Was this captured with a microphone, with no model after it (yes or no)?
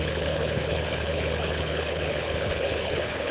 no